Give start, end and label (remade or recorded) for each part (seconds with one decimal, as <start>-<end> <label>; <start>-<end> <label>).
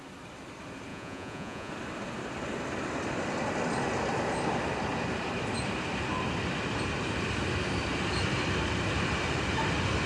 0.0-0.9 recorded; 0.9-1.7 remade; 1.7-10.1 recorded